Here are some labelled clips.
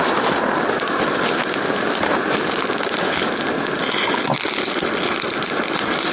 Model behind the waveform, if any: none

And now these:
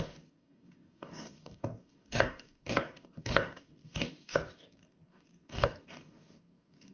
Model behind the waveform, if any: codec, DAC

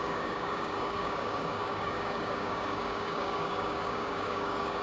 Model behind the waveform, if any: codec, DAC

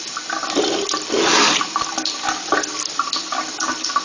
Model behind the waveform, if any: none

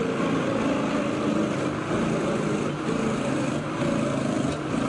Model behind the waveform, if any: none